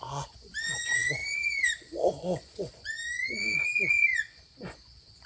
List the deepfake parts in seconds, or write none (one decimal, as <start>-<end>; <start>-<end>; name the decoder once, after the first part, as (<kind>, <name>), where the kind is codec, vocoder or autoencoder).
0.0-5.3 (vocoder, Vocos)